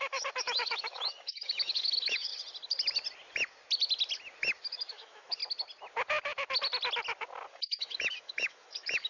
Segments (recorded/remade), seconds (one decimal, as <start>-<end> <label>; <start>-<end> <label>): 0.0-2.3 remade; 2.3-4.6 recorded; 4.6-5.4 remade; 5.4-7.5 recorded; 7.5-9.1 remade